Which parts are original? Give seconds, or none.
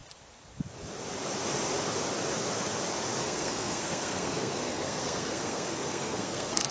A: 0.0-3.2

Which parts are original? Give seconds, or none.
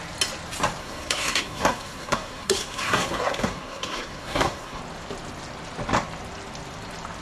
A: 0.0-0.8; 4.8-7.2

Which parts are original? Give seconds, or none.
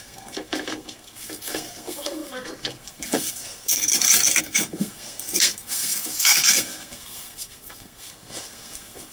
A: 3.9-4.4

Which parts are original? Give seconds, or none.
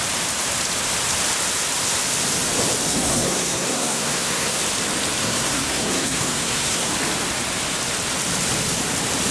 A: 0.0-2.9; 4.6-5.2; 6.9-9.3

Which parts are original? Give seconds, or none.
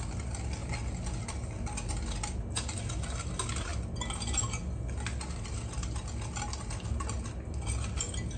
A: 0.0-8.4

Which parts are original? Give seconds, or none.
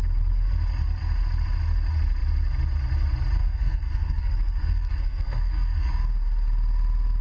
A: 0.0-3.4; 5.9-7.2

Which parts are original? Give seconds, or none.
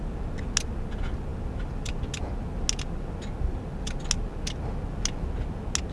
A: 0.0-5.9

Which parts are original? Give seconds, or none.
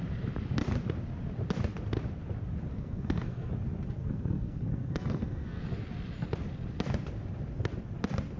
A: 0.0-2.7; 3.5-4.0; 5.6-8.4